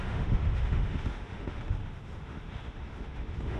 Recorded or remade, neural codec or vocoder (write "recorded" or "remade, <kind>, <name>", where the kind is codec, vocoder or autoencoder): remade, autoencoder, DAC-VAE